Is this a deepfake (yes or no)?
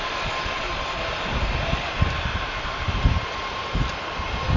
no